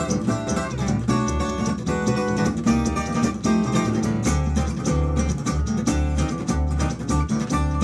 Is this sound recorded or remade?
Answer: recorded